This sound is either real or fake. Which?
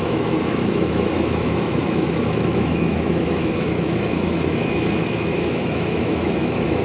fake